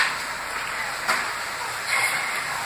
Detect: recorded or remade recorded